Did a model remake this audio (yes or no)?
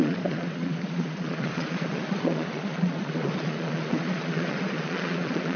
yes